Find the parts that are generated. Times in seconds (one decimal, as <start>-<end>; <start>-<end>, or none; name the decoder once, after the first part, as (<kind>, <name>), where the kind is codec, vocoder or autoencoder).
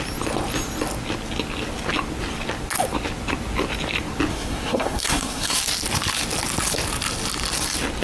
4.3-5.6 (codec, SNAC)